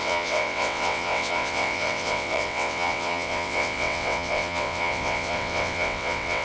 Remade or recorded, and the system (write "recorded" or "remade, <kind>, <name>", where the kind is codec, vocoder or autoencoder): remade, vocoder, WaveNeXt